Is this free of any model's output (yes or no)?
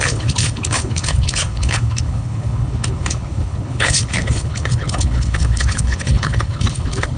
no